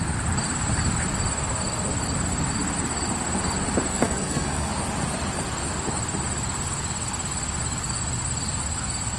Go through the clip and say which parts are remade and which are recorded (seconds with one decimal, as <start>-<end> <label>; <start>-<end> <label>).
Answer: 0.0-3.9 recorded; 3.9-4.7 remade; 4.7-9.2 recorded